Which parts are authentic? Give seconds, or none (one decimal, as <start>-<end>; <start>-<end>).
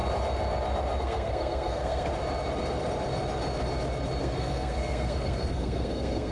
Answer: 0.0-1.0; 2.1-4.2